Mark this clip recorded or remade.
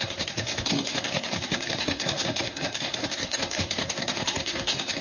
remade